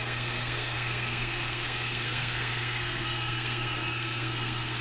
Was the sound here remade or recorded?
remade